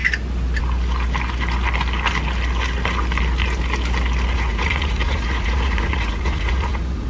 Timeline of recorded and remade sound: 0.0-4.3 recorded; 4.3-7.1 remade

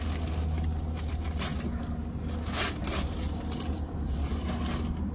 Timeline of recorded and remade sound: 0.0-5.1 recorded

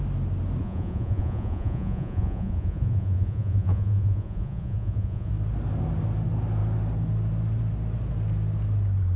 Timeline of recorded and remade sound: 0.0-0.6 recorded; 0.6-5.3 remade; 5.3-9.2 recorded